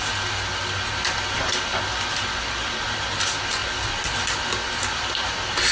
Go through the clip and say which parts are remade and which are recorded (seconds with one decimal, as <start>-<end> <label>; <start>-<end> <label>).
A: 0.0-5.7 recorded